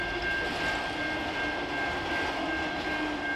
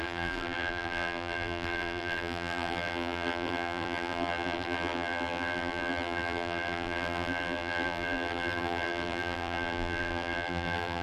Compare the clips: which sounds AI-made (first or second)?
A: second